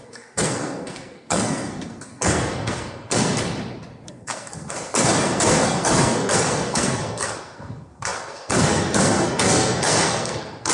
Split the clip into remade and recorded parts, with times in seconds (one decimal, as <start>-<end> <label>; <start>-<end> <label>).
0.0-3.3 remade; 3.3-4.1 recorded; 4.1-10.7 remade